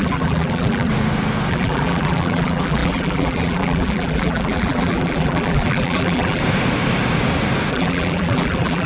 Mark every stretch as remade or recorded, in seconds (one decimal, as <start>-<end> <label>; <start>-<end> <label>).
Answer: 0.0-0.9 remade; 0.9-1.5 recorded; 1.5-6.4 remade; 6.4-7.7 recorded; 7.7-8.9 remade